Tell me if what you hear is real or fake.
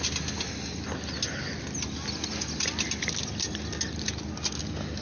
real